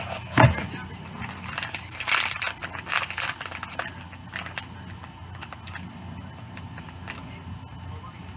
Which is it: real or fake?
real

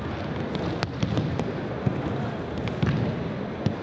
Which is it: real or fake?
real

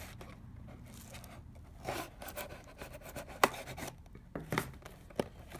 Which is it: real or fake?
real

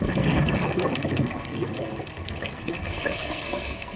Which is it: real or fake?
fake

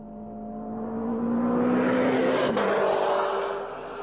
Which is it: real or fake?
real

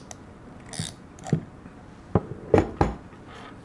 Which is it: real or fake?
real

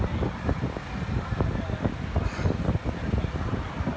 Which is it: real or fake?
real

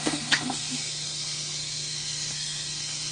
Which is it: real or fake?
fake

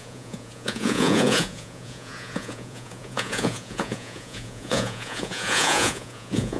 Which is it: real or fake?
fake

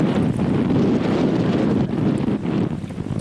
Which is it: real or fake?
real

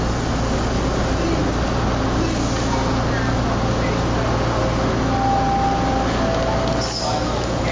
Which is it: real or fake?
real